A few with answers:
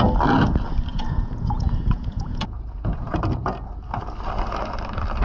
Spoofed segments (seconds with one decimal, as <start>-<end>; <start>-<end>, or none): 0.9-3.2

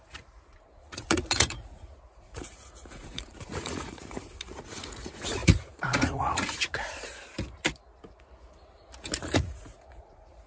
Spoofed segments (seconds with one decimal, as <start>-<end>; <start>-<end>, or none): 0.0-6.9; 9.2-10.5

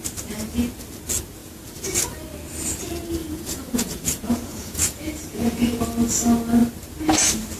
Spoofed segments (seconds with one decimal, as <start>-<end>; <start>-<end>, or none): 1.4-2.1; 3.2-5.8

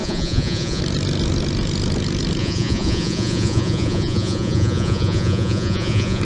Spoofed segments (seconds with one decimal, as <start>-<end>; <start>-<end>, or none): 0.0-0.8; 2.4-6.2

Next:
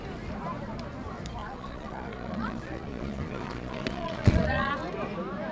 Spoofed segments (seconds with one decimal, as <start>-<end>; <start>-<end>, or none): 1.4-4.7

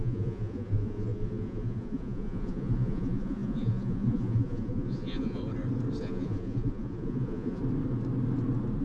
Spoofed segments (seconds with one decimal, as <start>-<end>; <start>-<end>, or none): 0.0-5.4; 6.0-7.6

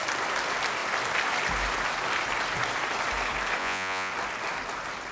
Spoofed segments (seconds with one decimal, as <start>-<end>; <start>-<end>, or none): 3.6-4.1

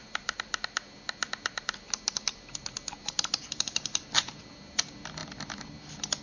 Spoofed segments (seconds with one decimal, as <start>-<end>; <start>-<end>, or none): none